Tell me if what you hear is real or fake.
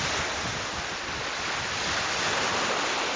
real